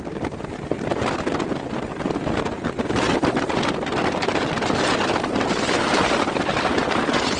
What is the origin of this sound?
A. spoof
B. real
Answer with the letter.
B